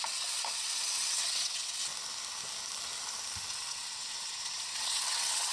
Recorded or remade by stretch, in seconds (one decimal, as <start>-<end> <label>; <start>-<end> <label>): 0.0-1.9 remade; 1.9-3.5 recorded; 3.5-5.5 remade